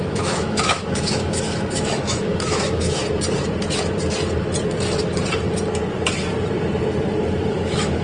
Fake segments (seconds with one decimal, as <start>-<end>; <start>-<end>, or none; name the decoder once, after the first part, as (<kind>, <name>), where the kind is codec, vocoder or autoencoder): 0.0-3.0 (autoencoder, DAC-VAE); 7.5-8.0